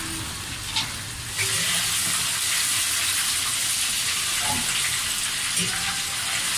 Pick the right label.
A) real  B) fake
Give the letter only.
A